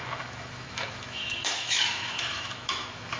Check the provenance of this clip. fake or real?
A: fake